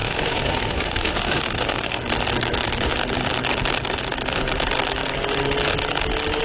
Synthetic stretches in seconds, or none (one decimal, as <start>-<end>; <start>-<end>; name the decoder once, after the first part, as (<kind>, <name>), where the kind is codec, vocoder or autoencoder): 0.0-2.0 (codec, SNAC)